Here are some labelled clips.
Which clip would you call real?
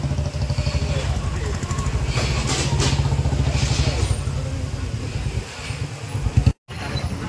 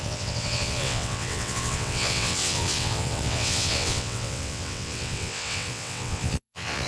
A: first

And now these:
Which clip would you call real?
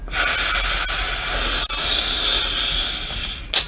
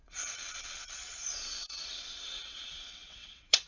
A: first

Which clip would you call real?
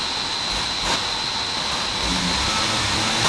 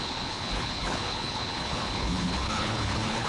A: first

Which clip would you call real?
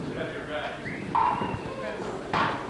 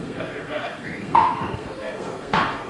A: first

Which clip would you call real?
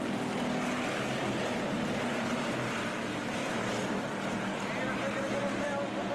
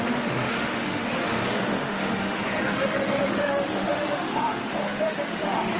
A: first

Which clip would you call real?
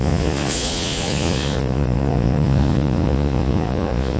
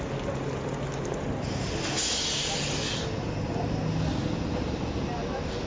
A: second